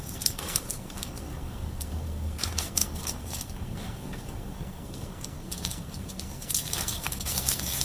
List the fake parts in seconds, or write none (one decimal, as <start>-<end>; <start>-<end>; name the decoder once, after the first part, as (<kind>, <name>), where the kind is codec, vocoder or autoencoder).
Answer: 0.0-7.8 (codec, SNAC)